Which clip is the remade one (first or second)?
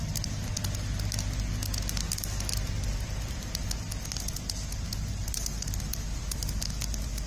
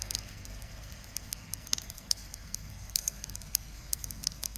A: second